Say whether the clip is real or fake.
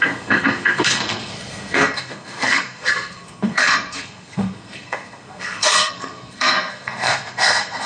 fake